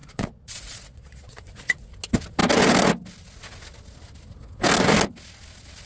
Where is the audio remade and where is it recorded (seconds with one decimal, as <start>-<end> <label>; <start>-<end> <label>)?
0.0-1.9 remade; 1.9-5.9 recorded